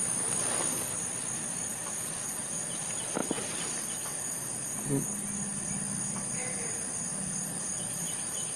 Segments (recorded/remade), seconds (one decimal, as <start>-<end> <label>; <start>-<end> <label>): 0.0-8.6 recorded